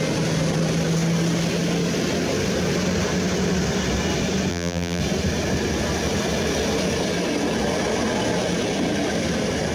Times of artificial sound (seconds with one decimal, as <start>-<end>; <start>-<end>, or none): 4.5-5.0